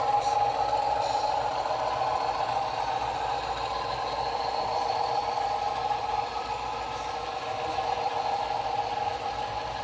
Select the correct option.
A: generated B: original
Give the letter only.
B